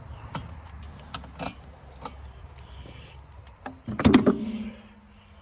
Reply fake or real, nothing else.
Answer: real